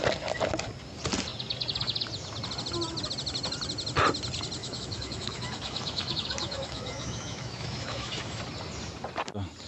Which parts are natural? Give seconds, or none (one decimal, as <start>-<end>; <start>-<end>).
0.0-4.6; 8.4-9.7